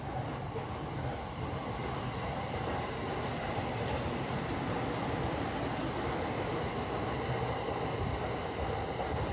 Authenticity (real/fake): real